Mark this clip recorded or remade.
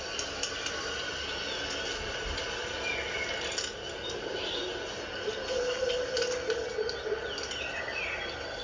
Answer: recorded